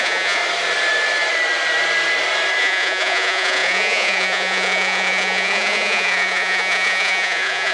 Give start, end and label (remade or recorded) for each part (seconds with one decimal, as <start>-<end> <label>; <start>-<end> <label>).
0.0-0.4 remade; 0.4-2.6 recorded; 2.6-7.7 remade

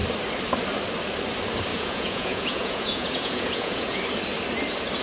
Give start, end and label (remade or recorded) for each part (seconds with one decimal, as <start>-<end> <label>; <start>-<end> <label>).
0.0-1.7 recorded; 1.7-4.0 remade; 4.0-5.0 recorded

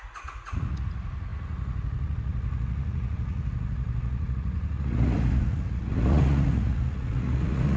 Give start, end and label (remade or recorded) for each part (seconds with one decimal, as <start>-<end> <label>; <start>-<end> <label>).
0.0-7.8 remade

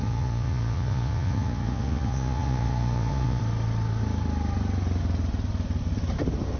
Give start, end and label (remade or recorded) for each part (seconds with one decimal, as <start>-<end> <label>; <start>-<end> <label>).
0.0-3.4 remade; 3.4-6.6 recorded

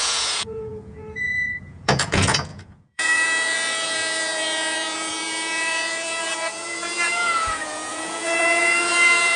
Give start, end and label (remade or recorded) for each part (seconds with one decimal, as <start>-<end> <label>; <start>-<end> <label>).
0.0-9.4 remade

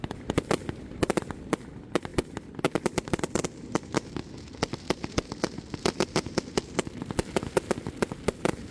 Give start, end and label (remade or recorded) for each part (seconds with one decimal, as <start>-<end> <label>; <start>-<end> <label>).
0.0-8.7 recorded

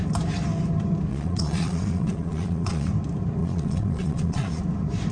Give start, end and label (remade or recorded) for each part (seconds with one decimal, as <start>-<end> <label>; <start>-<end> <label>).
0.0-1.1 recorded; 1.1-2.9 remade; 2.9-3.4 recorded; 3.4-4.6 remade; 4.6-5.1 recorded